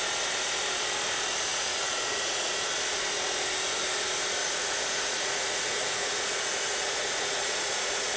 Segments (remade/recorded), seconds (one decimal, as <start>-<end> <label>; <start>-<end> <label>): 0.0-1.5 recorded; 1.5-2.5 remade; 2.5-4.4 recorded; 4.4-8.2 remade